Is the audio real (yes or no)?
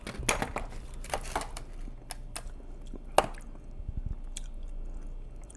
yes